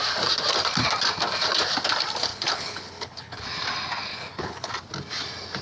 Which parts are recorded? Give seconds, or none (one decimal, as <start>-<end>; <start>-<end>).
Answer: 0.0-2.3; 3.4-4.1; 4.7-5.6